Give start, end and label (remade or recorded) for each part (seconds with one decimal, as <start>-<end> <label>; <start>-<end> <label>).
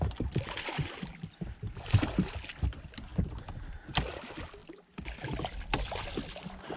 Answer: 0.0-6.8 recorded